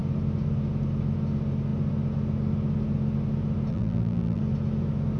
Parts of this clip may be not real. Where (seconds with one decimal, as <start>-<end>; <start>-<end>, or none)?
3.7-4.4